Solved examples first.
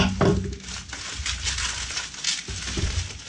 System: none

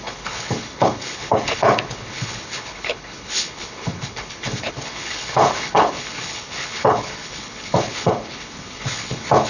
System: codec, HILCodec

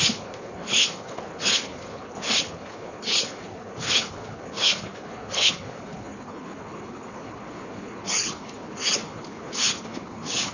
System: codec, HILCodec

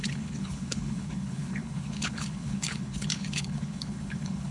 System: codec, HILCodec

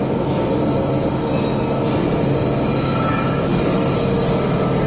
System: none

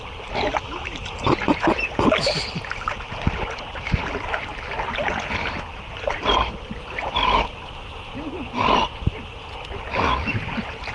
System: none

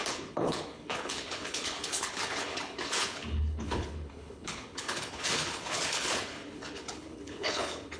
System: codec, HILCodec